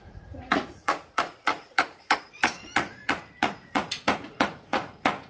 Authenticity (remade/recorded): remade